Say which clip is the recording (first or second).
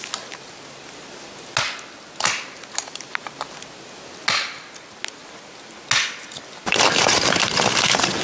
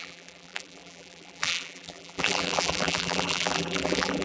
first